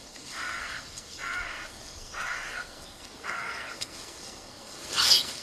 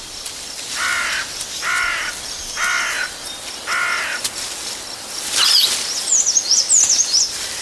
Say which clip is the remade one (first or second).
first